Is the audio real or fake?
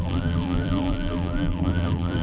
fake